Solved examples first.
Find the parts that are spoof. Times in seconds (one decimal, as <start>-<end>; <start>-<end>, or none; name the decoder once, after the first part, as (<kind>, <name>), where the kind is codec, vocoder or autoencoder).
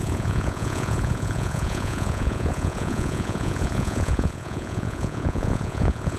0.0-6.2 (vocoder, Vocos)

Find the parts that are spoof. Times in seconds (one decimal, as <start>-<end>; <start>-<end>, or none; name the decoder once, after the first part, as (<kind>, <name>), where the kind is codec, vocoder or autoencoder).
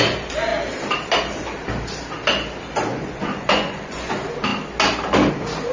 2.9-4.1 (vocoder, Vocos)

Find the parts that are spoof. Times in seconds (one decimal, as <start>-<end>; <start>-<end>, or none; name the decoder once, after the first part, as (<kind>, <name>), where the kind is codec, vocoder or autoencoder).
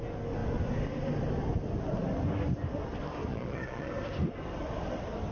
3.3-3.9 (vocoder, Vocos)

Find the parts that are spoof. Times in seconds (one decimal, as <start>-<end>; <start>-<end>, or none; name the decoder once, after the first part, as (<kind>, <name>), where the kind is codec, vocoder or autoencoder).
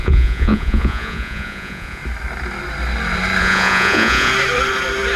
0.0-2.0 (vocoder, Vocos); 3.4-4.3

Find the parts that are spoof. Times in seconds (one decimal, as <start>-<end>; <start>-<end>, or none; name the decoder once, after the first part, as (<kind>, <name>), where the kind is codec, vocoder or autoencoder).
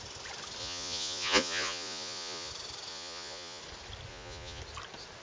0.6-2.5 (vocoder, Vocos); 2.9-3.6; 4.1-4.6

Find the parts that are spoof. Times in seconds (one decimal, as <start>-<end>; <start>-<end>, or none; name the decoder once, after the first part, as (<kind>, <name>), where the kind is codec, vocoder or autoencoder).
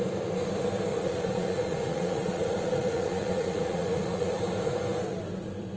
0.9-4.4 (vocoder, Vocos)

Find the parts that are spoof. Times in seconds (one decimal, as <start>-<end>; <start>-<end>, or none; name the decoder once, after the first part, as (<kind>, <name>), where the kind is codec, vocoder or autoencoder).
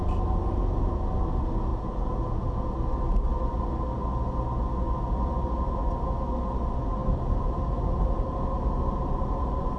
1.7-2.7 (vocoder, Vocos)